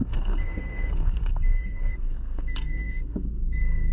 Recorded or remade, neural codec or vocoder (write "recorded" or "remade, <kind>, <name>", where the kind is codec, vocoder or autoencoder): remade, codec, SNAC